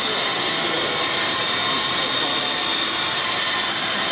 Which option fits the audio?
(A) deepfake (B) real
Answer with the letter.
B